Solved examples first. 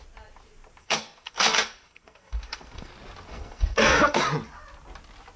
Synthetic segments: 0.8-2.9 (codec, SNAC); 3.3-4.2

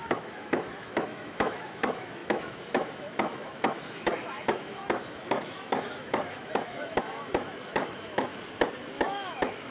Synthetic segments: 0.0-8.3 (autoencoder, DAC-VAE); 8.9-9.7

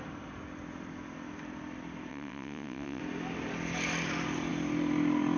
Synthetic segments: 2.1-3.0 (vocoder, WaveNeXt)

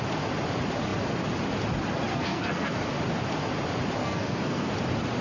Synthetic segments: 2.1-2.8 (codec, SNAC); 4.0-4.7

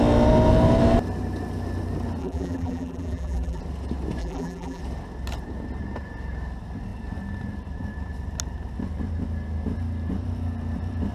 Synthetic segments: 2.2-3.6 (vocoder, BigVGAN v2); 4.2-4.8

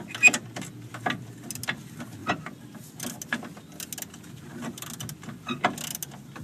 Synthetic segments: none

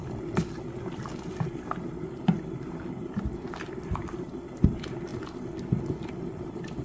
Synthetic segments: none